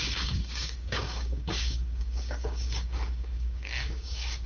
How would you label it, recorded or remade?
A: remade